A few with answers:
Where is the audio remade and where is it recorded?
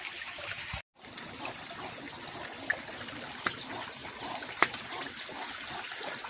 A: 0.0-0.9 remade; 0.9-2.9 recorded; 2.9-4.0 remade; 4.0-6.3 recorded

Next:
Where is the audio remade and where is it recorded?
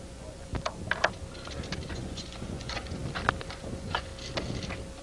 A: 0.0-0.5 remade; 0.5-1.9 recorded; 1.9-3.0 remade; 3.0-3.5 recorded; 3.5-4.1 remade; 4.1-5.0 recorded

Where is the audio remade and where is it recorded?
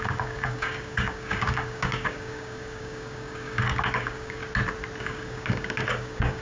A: 0.0-4.4 remade; 4.4-5.0 recorded; 5.0-6.4 remade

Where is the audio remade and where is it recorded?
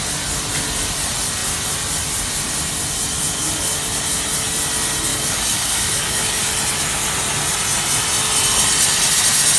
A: 0.0-5.1 recorded; 5.1-6.5 remade; 6.5-9.6 recorded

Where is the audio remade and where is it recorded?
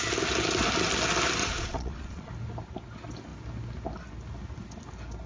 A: 0.0-1.4 recorded; 1.4-2.3 remade; 2.3-5.3 recorded